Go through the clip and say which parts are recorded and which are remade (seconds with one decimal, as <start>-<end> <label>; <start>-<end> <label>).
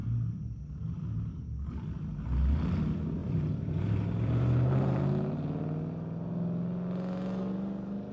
0.0-3.2 recorded; 3.2-5.0 remade; 5.0-8.1 recorded